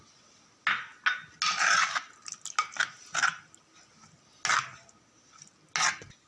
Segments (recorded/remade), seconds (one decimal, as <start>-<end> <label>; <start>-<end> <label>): 0.0-6.3 recorded